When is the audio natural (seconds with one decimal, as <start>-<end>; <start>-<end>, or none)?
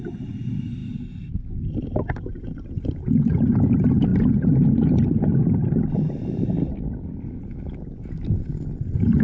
0.0-9.2